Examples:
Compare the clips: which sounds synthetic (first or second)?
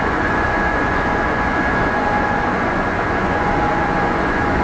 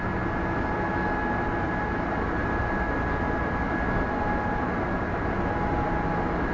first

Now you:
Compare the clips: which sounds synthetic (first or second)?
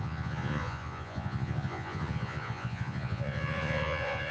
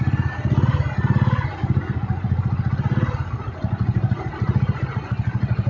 first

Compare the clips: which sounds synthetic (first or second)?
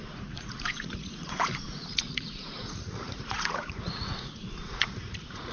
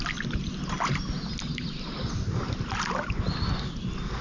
first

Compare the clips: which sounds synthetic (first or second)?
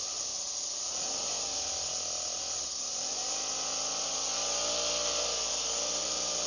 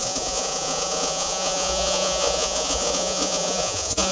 second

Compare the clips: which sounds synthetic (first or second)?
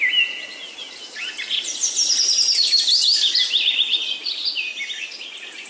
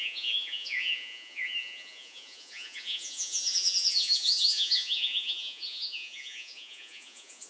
second